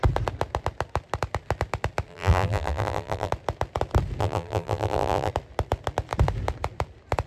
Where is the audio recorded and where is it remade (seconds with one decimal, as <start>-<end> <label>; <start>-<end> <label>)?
0.0-2.1 recorded; 2.1-3.3 remade; 3.3-4.2 recorded; 4.2-5.3 remade; 5.3-7.3 recorded